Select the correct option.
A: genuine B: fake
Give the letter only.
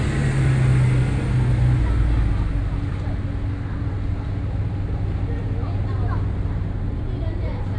A